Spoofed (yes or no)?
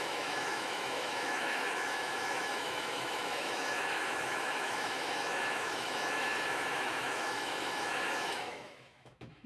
yes